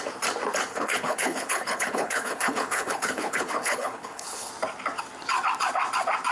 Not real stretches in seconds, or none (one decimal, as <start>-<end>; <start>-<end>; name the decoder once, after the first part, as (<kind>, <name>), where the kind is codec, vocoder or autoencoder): 0.7-4.5 (codec, HILCodec)